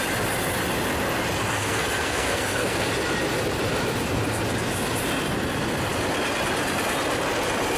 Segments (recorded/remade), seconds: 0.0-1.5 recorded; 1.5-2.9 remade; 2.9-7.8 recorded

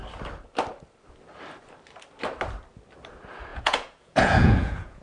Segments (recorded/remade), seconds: 0.0-3.5 recorded; 3.5-5.0 remade

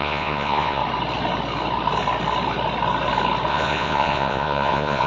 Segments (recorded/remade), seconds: 0.0-0.8 remade; 0.8-3.5 recorded; 3.5-5.1 remade